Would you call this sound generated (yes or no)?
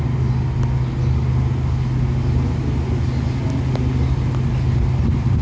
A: no